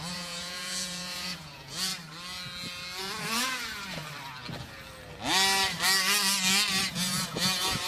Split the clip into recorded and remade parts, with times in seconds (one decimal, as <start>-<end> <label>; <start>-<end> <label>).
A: 0.0-1.9 remade; 1.9-3.0 recorded; 3.0-4.0 remade; 4.0-6.8 recorded; 6.8-7.9 remade